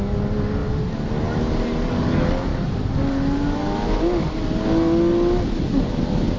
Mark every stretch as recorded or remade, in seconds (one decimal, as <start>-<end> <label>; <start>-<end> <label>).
0.0-6.4 recorded